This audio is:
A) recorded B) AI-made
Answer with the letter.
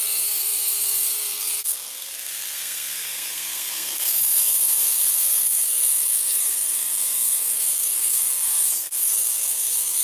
B